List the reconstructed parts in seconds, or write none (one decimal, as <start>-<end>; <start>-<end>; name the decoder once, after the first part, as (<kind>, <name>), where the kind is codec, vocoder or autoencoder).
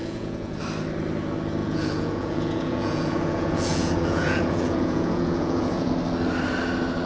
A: 0.0-0.6 (vocoder, Vocos); 1.6-5.9